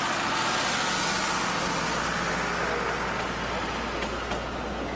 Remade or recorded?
recorded